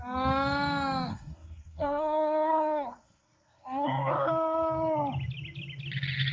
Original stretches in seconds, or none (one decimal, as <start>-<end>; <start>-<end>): 0.0-1.1; 4.3-6.3